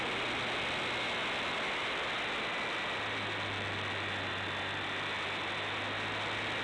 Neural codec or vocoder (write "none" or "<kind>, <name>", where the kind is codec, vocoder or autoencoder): none